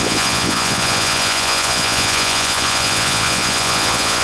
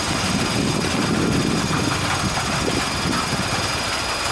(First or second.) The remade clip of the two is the first